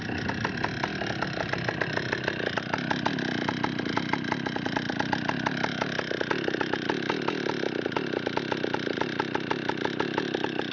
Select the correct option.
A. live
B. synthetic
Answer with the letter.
A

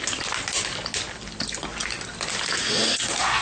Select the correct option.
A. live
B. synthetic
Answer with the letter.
A